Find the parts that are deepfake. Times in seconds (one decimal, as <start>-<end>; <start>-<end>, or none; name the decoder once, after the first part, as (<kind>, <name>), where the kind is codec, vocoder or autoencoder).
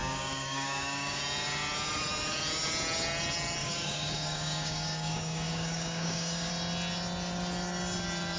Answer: 0.0-1.2 (codec, DAC); 3.6-6.5